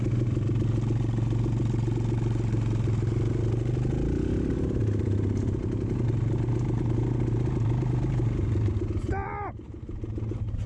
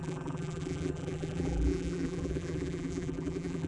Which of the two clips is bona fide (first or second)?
first